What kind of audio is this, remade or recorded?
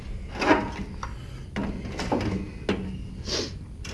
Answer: recorded